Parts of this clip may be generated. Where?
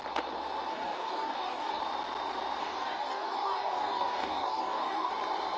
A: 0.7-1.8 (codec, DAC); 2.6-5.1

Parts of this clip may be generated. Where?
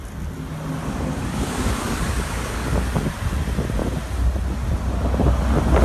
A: 0.8-3.0 (codec, DAC)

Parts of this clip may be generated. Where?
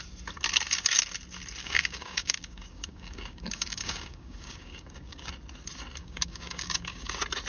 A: 1.6-5.3 (codec, DAC); 6.0-7.1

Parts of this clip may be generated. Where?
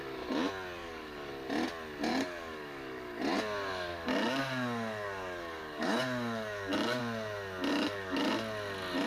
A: 0.8-1.3 (codec, DAC); 2.1-3.2; 3.9-7.0; 7.7-8.3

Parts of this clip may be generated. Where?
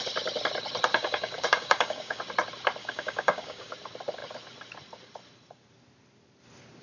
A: 0.9-2.2 (codec, DAC); 2.8-3.7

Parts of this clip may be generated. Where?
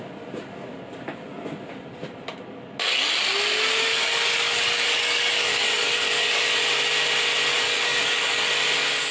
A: 3.9-6.6 (codec, DAC); 7.5-8.5